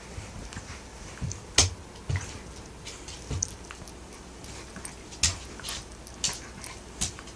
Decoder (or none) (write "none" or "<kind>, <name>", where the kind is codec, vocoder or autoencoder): none